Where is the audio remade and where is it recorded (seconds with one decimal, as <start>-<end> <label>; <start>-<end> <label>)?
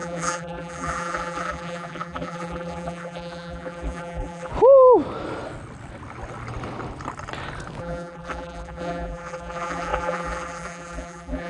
0.0-4.5 remade; 4.5-7.8 recorded; 7.8-11.5 remade